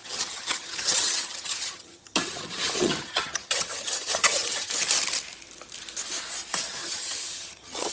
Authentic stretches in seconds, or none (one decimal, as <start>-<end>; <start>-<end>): 4.7-6.8